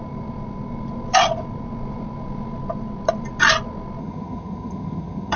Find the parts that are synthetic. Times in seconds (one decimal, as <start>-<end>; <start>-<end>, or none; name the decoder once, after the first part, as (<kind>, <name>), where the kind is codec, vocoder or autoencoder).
4.0-5.4 (vocoder, HiFi-GAN)